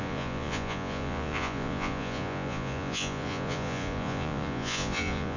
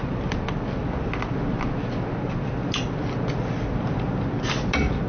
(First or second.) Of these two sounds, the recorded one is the second